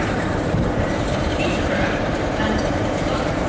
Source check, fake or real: fake